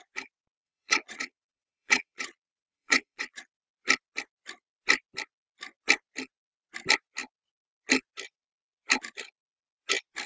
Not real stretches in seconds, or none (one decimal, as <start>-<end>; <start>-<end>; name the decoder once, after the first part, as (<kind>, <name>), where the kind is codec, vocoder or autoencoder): 0.6-3.6 (vocoder, Vocos)